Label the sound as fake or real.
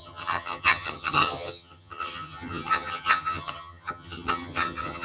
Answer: fake